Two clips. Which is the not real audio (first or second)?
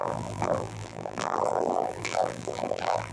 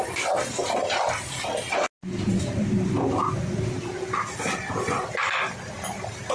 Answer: first